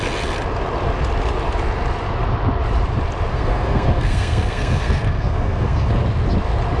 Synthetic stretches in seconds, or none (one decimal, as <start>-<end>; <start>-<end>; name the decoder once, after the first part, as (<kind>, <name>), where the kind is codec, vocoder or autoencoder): 3.3-5.9 (codec, SNAC)